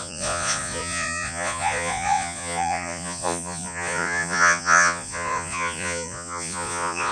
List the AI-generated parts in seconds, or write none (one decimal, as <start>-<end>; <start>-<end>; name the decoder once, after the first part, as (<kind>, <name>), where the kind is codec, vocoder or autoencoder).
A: 0.0-7.1 (vocoder, Vocos)